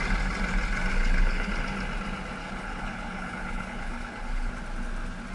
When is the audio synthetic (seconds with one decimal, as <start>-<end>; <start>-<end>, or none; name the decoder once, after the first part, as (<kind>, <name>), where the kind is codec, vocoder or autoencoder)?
0.9-1.5 (codec, HILCodec); 2.4-4.5